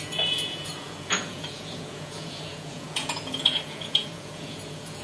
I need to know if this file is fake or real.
fake